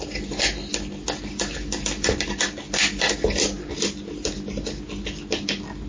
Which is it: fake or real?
real